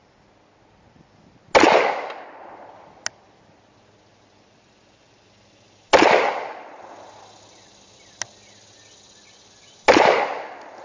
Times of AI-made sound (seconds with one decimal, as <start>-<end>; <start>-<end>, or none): none